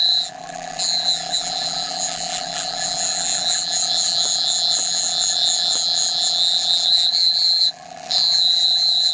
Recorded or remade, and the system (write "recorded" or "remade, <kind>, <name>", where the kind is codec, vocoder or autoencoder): remade, vocoder, BigVGAN v2